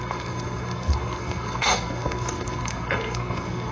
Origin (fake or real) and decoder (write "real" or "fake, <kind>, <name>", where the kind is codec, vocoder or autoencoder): fake, codec, SNAC